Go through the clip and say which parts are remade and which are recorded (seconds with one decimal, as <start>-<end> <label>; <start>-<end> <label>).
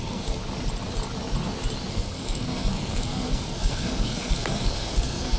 0.0-0.4 remade; 0.4-1.9 recorded; 1.9-5.4 remade